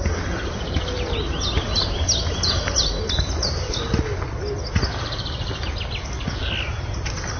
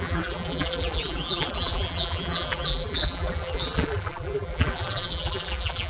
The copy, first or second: second